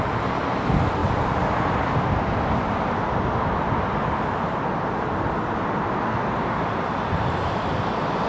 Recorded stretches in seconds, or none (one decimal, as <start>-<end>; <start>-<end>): 0.0-8.3